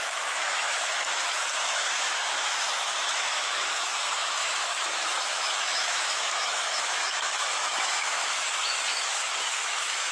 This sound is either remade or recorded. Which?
remade